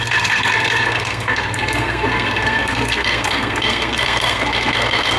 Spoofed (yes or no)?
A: yes